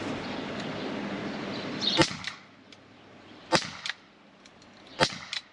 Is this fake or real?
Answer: real